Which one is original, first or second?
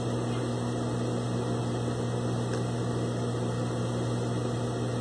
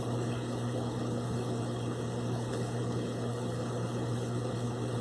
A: first